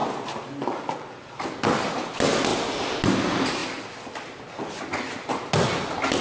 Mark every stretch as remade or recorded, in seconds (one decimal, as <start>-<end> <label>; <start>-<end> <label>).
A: 0.0-6.2 recorded